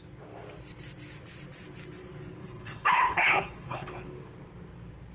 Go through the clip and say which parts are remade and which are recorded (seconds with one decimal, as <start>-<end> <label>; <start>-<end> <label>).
0.0-2.4 recorded; 2.4-3.9 remade; 3.9-5.1 recorded